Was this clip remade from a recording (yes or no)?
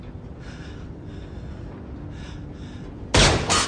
no